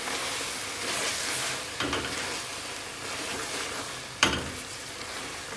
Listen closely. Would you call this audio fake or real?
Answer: real